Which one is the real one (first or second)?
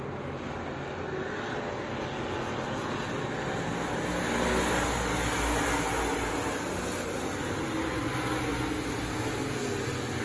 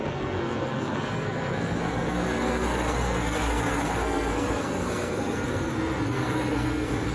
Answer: first